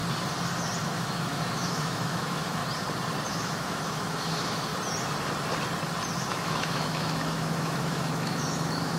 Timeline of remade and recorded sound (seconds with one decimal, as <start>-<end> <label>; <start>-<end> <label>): 0.0-0.8 recorded; 0.8-2.6 remade; 2.6-3.3 recorded; 3.3-4.7 remade; 4.7-6.2 recorded; 6.2-9.0 remade